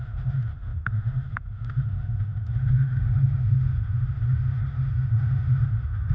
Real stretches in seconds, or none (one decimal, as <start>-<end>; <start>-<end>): none